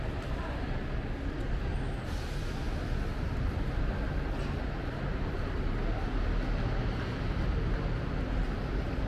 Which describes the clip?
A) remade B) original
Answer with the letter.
B